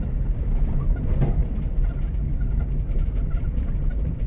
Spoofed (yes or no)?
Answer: yes